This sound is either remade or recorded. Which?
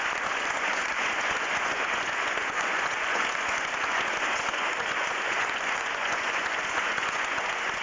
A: remade